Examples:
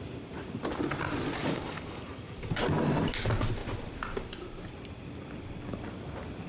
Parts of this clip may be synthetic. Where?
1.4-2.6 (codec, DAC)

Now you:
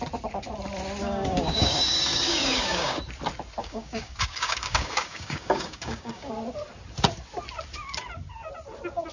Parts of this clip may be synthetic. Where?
1.0-3.0 (codec, DAC); 3.6-6.3

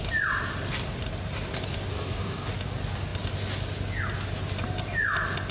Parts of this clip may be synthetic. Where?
1.9-2.5 (codec, DAC)